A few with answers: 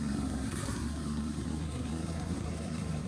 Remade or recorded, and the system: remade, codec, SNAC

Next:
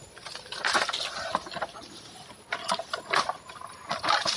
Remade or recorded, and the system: recorded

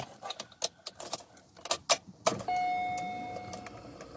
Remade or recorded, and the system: recorded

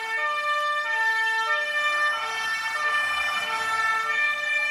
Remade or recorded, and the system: recorded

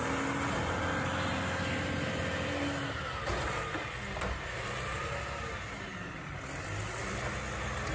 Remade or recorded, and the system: recorded